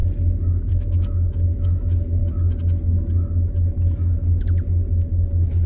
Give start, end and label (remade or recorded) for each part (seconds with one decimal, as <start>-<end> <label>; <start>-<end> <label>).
0.0-0.7 recorded; 0.7-2.2 remade; 2.2-5.7 recorded